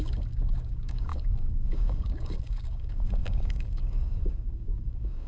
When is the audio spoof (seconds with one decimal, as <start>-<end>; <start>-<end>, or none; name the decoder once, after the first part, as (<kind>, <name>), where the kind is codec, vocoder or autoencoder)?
0.0-5.3 (codec, DAC)